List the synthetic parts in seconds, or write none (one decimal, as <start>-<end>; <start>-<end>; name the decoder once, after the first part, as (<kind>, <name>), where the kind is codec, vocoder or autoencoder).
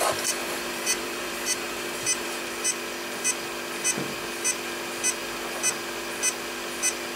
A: 0.4-2.4 (vocoder, BigVGAN v2)